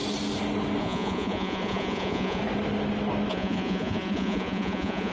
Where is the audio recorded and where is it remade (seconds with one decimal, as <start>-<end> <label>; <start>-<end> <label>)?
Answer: 0.0-0.8 recorded; 0.8-2.4 remade; 2.4-3.3 recorded; 3.3-5.1 remade